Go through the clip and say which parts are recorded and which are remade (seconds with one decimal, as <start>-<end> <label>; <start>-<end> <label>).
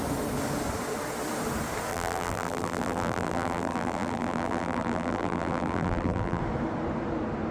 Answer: 0.0-1.9 recorded; 1.9-6.4 remade; 6.4-7.5 recorded